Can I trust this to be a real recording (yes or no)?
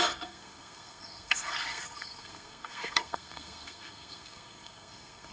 no